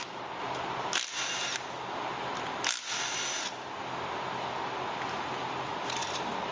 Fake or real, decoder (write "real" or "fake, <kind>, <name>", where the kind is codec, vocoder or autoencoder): real